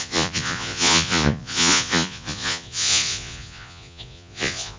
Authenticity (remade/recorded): remade